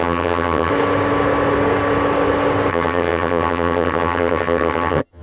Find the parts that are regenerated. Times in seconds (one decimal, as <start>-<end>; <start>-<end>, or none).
0.0-0.7; 2.7-5.2